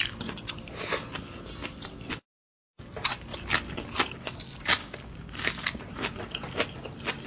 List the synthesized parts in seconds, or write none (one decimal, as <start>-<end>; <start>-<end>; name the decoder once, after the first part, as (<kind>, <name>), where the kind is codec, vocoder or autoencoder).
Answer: 4.8-5.8 (codec, DAC)